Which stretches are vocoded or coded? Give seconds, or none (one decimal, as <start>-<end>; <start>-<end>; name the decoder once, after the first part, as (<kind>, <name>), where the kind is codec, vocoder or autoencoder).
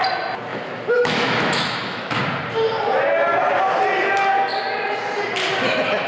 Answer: 0.5-2.2 (autoencoder, DAC-VAE)